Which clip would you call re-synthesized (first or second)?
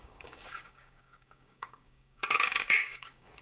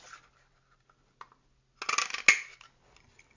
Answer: first